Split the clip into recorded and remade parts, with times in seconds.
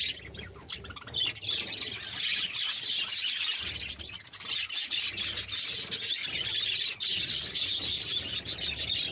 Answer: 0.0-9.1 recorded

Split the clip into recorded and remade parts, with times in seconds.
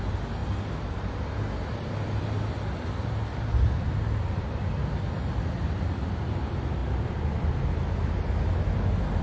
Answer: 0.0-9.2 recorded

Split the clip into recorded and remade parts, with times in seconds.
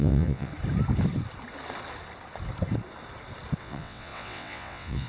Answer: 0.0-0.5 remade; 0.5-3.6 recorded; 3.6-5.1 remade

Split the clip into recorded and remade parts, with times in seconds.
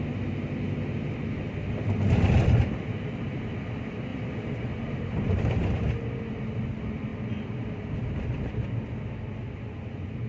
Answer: 0.0-4.1 recorded; 4.1-5.4 remade; 5.4-10.3 recorded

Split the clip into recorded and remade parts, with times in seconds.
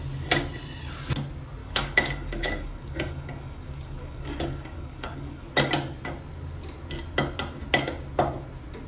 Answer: 0.0-1.6 recorded; 1.6-5.5 remade; 5.5-8.9 recorded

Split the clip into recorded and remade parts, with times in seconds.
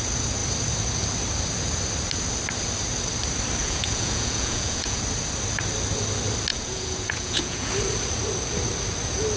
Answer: 0.0-3.6 recorded; 3.6-5.0 remade; 5.0-6.5 recorded; 6.5-7.7 remade; 7.7-9.4 recorded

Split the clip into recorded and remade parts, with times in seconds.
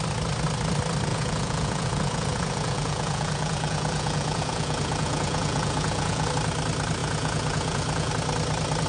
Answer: 0.0-1.1 recorded; 1.1-6.3 remade; 6.3-7.0 recorded; 7.0-8.1 remade; 8.1-8.9 recorded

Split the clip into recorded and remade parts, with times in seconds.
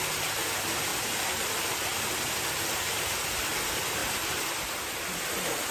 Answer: 0.0-5.7 recorded